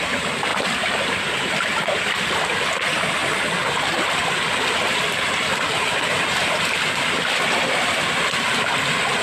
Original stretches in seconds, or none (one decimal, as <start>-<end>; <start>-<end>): 0.0-3.2; 8.2-9.2